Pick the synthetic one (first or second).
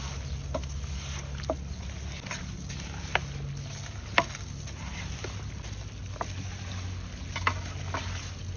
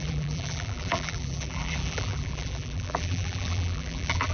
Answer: second